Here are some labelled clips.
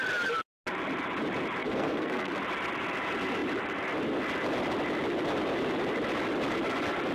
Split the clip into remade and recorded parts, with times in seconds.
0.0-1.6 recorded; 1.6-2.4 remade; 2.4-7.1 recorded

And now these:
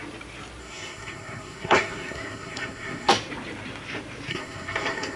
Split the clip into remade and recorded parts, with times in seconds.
0.0-0.6 recorded; 0.6-3.1 remade; 3.1-4.3 recorded; 4.3-5.2 remade

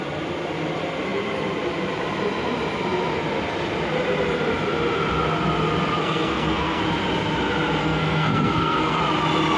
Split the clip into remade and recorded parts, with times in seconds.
0.0-6.0 recorded; 6.0-6.8 remade; 6.8-7.8 recorded; 7.8-9.0 remade; 9.0-9.6 recorded

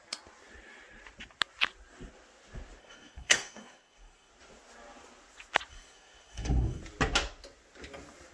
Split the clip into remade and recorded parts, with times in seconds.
0.0-2.8 recorded; 2.8-4.3 remade; 4.3-5.7 recorded; 5.7-6.8 remade; 6.8-8.3 recorded

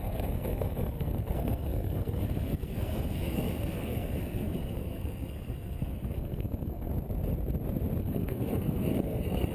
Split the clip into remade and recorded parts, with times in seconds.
0.0-6.9 remade; 6.9-8.0 recorded; 8.0-9.5 remade

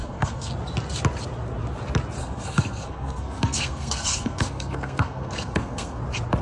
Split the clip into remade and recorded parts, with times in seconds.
0.0-0.5 remade; 0.5-2.2 recorded; 2.2-6.0 remade; 6.0-6.4 recorded

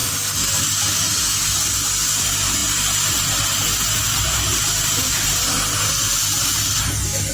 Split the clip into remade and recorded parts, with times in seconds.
0.0-7.3 recorded